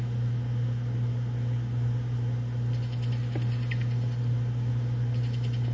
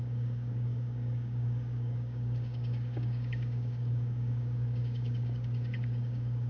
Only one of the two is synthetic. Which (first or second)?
second